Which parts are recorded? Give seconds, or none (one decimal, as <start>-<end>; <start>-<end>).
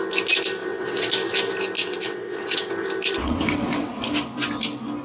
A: 0.0-0.6; 1.1-1.8; 2.7-3.2; 4.0-5.0